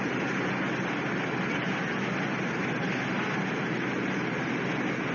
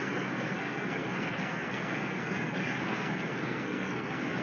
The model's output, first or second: second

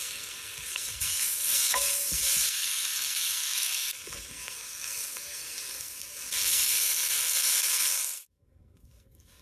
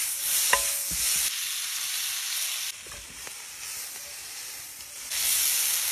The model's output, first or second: first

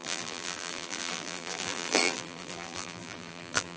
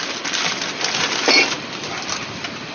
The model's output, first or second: first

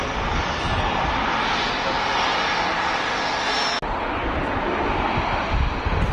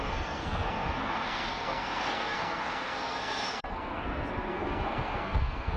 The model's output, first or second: second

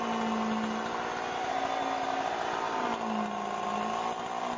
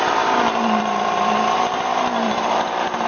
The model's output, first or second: second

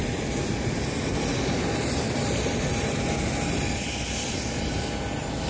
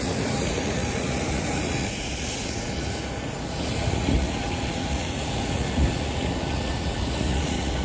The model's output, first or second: second